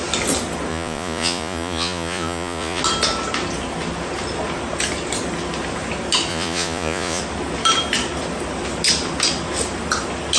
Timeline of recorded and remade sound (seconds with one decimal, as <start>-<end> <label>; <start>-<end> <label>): 0.0-0.7 recorded; 0.7-2.8 remade; 2.8-6.3 recorded; 6.3-7.2 remade; 7.2-10.4 recorded